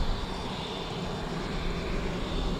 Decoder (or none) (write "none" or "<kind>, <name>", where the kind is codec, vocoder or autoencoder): none